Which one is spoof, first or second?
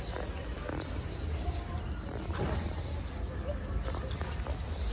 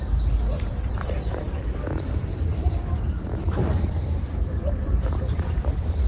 second